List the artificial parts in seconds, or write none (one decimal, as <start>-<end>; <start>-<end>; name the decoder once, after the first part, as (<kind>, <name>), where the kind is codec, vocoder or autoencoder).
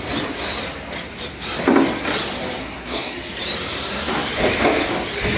2.6-3.3 (codec, SNAC)